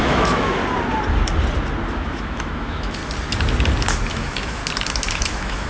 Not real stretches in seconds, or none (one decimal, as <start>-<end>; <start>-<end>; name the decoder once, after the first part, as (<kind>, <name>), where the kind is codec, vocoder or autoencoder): 0.0-0.6 (autoencoder, DAC-VAE); 1.9-3.0; 4.1-4.6; 5.1-5.7